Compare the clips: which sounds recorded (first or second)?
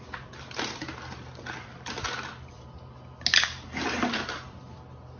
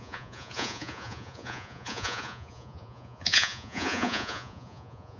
first